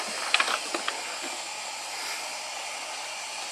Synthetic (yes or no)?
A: no